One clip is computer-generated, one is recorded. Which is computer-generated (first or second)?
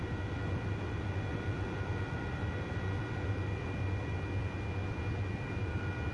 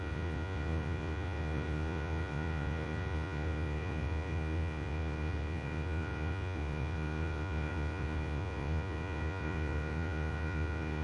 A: second